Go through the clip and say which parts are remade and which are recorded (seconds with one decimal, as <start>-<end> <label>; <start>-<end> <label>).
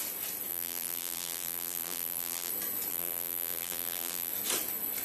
0.0-0.5 recorded; 0.5-2.5 remade; 2.5-2.9 recorded; 2.9-4.3 remade; 4.3-5.0 recorded